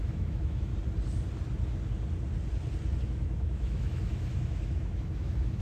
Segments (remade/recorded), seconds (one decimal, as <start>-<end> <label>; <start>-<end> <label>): 0.0-0.7 remade; 0.7-3.0 recorded; 3.0-5.6 remade